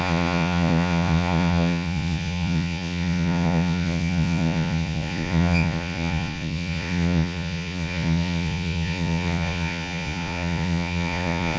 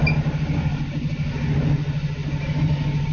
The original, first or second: second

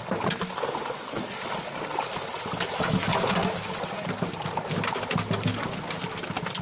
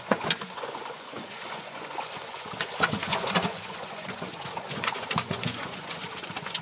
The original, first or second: first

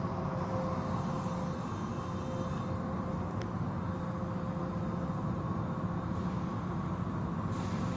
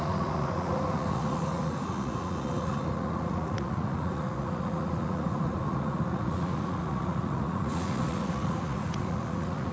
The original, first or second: first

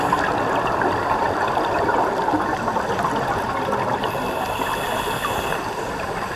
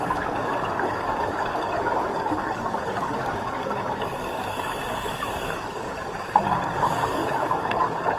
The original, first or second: first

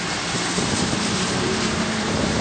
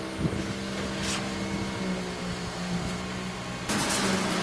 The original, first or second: second